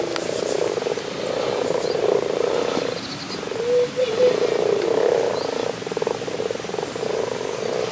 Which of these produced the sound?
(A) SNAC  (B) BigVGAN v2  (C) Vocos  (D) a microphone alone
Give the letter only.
D